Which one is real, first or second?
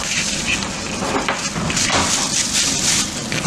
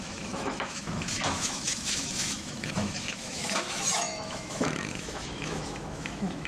first